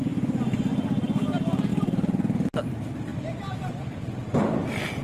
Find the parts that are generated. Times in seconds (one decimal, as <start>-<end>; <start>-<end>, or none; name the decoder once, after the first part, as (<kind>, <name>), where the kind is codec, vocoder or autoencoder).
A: none